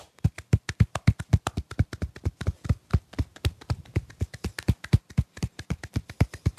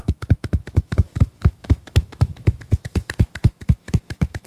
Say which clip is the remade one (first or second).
second